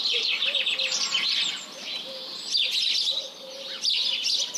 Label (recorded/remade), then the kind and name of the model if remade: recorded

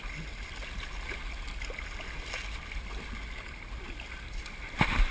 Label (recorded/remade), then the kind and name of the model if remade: recorded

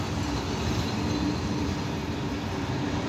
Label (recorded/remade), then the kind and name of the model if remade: recorded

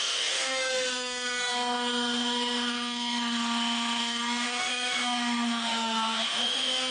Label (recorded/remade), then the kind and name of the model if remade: remade, autoencoder, DAC-VAE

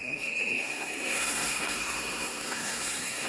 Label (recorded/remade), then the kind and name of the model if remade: remade, codec, SNAC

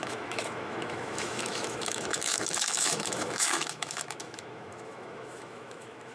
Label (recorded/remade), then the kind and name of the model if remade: remade, autoencoder, DAC-VAE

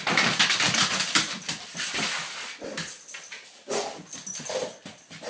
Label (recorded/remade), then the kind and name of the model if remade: recorded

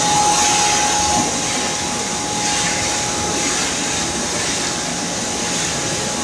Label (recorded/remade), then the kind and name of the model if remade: recorded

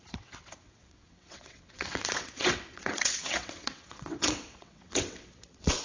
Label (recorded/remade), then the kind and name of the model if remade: remade, vocoder, WaveNeXt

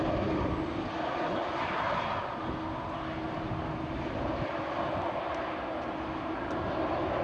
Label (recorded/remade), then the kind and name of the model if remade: recorded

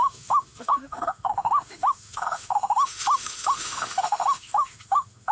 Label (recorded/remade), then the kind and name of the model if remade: remade, autoencoder, DAC-VAE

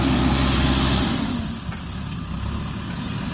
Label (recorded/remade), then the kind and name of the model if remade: recorded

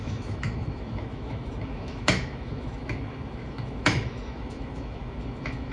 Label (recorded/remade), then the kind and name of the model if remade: remade, autoencoder, DAC-VAE